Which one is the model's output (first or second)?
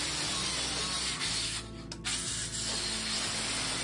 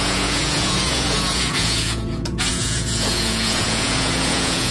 second